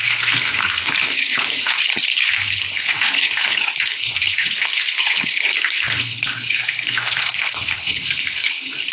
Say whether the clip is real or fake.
fake